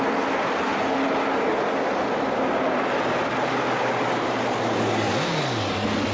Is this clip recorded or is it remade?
recorded